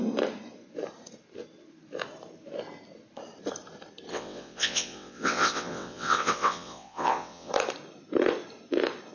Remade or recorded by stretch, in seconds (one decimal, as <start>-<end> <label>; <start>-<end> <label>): 0.0-4.1 recorded; 4.1-7.5 remade; 7.5-9.1 recorded